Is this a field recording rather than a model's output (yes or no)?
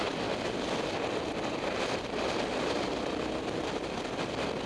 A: yes